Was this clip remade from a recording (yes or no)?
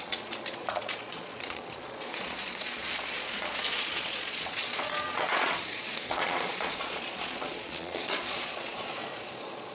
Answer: yes